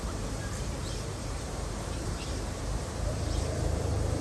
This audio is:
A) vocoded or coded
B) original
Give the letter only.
A